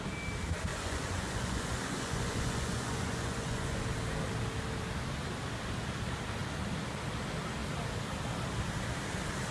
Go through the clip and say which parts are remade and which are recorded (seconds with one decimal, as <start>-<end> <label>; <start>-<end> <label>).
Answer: 0.0-0.7 recorded; 0.7-3.8 remade; 3.8-9.5 recorded